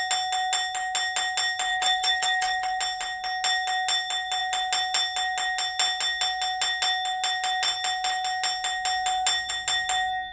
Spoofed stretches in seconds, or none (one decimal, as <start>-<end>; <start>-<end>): 1.7-2.8